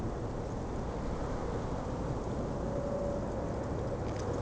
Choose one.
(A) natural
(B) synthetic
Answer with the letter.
A